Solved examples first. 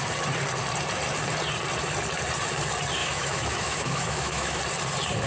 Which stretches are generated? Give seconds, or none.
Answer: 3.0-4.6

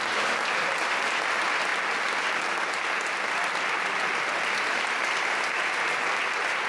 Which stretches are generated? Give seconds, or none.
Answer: none

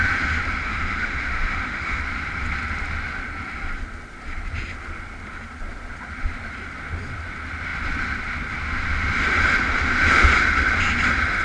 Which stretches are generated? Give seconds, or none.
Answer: 0.6-2.0

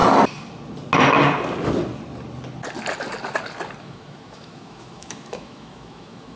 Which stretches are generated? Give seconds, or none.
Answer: 3.8-6.4